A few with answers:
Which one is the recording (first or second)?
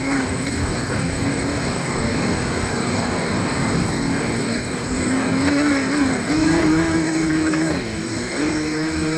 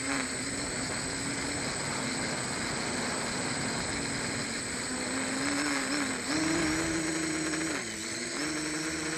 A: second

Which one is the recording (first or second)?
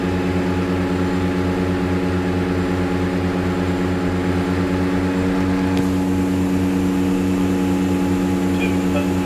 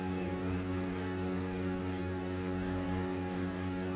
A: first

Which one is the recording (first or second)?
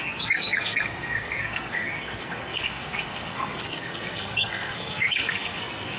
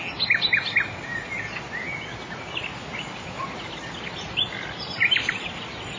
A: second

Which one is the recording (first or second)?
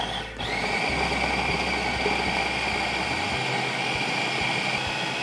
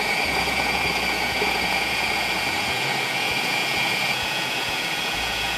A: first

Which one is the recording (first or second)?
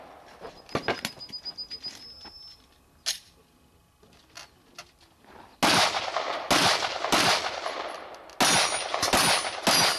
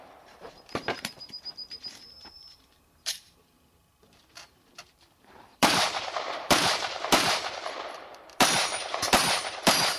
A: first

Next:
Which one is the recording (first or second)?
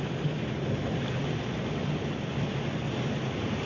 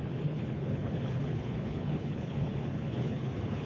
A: first